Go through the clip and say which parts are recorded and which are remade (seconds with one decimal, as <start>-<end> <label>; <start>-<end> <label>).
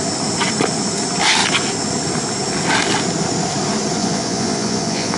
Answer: 0.0-4.0 recorded; 4.0-5.2 remade